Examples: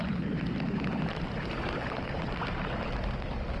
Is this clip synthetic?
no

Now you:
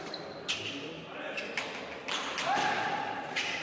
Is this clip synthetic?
no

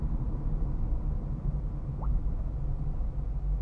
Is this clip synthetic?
no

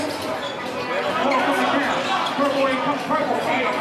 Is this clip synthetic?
no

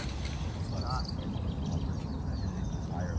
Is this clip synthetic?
no